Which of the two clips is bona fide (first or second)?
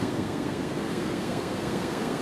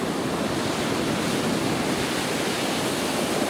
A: second